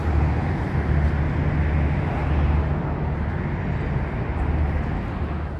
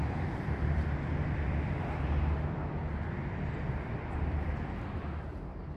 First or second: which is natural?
first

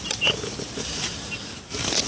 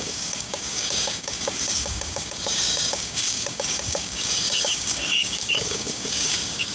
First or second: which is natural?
first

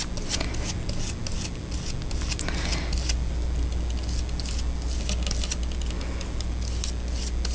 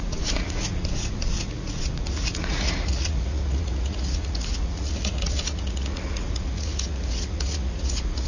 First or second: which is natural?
first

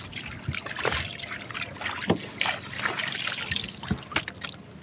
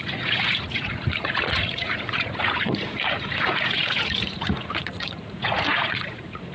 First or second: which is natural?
first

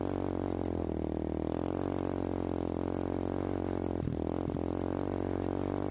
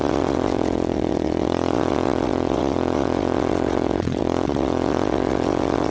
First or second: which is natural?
first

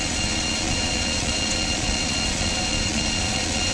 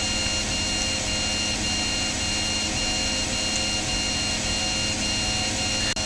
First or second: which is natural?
second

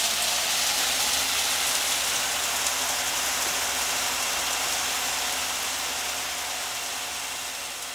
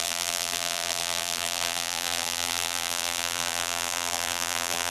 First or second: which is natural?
first